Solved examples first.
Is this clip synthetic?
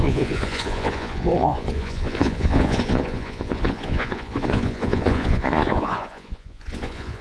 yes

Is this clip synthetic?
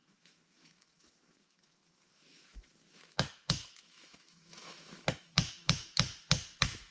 yes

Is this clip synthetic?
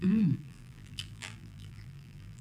yes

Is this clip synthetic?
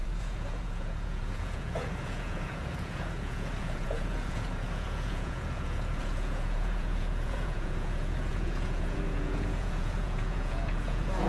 yes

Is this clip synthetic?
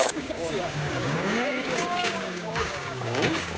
yes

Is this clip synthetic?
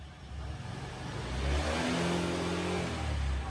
no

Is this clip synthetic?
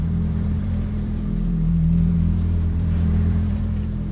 yes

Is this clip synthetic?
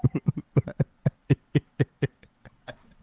yes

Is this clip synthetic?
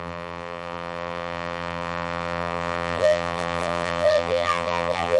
yes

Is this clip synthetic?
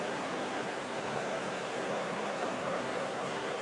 yes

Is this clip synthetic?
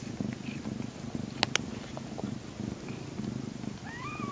no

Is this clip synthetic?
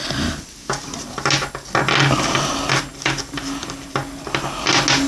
no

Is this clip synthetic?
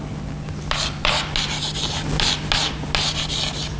no